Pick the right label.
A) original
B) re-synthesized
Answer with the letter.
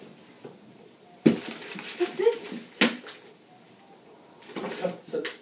A